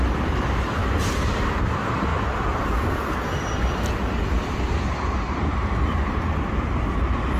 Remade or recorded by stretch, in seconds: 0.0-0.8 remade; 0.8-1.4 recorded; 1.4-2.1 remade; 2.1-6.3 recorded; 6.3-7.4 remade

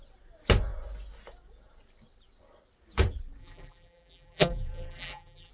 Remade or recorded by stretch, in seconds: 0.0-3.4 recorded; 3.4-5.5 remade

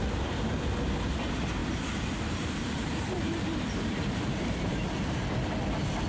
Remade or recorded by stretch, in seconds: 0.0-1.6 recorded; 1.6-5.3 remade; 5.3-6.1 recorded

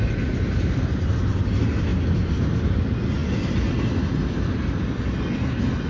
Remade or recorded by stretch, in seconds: 0.0-5.9 recorded